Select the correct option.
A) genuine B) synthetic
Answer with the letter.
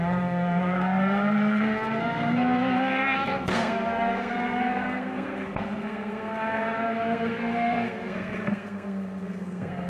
B